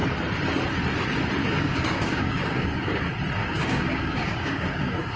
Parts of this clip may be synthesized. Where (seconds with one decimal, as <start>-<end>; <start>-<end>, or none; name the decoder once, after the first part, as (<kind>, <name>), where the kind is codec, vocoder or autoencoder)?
1.4-3.0 (codec, DAC); 3.4-5.2